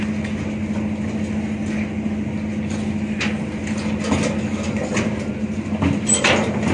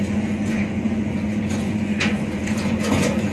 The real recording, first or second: first